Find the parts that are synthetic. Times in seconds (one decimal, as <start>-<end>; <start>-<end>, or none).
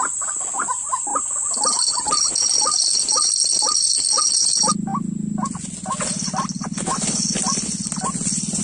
none